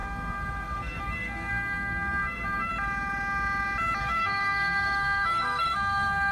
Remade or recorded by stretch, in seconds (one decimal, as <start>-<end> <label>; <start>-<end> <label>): 0.0-2.7 remade; 2.7-4.0 recorded; 4.0-6.3 remade